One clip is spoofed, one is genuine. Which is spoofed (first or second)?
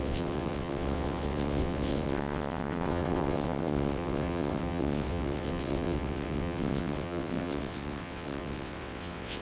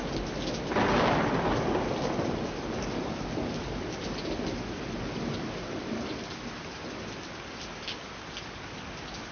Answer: first